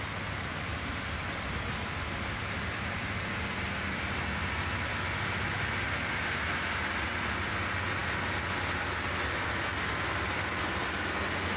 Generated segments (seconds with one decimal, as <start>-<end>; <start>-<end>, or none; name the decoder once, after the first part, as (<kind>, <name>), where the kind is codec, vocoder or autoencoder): none

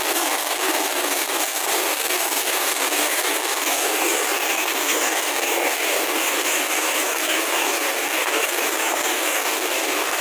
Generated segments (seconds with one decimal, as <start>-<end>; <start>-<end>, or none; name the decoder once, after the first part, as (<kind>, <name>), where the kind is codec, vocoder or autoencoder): 0.0-10.2 (codec, DAC)

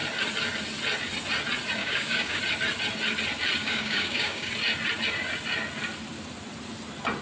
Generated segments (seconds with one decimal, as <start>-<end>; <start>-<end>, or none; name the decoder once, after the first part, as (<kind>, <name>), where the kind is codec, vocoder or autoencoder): 1.8-2.4 (codec, DAC); 3.6-4.5

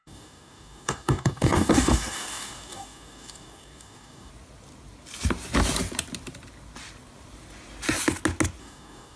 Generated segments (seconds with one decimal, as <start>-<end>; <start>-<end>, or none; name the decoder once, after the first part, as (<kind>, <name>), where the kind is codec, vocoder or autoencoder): 0.0-4.3 (codec, DAC); 8.6-9.2

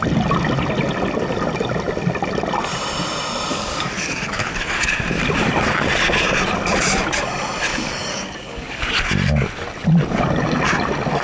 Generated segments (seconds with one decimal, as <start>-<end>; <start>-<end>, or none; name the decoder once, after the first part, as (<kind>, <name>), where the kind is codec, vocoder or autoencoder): 3.5-4.9 (codec, DAC); 7.7-8.8

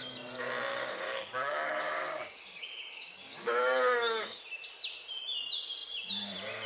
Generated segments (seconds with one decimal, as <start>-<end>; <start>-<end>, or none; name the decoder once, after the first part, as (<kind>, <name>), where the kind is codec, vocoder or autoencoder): 0.7-4.4 (codec, DAC)

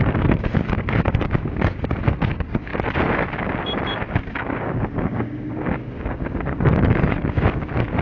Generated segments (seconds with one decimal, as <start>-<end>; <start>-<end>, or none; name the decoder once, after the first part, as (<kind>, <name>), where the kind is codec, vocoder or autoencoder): 0.0-2.7 (codec, DAC); 4.0-8.0